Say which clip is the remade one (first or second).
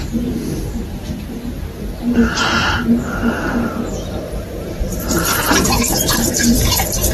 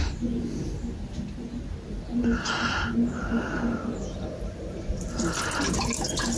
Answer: first